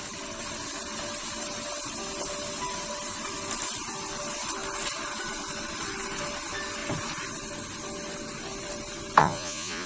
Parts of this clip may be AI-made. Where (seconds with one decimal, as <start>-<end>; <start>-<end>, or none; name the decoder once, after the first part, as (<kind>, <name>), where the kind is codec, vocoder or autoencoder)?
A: 9.2-9.9 (vocoder, Vocos)